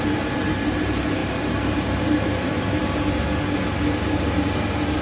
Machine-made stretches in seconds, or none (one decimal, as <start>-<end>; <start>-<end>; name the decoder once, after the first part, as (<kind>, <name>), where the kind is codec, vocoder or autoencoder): 0.0-2.8 (vocoder, BigVGAN v2); 4.0-5.0